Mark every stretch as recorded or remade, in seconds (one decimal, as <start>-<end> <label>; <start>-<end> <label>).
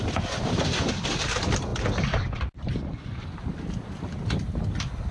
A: 0.0-5.1 recorded